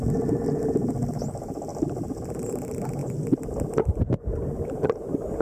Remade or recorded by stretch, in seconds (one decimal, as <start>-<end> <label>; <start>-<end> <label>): 0.0-5.4 recorded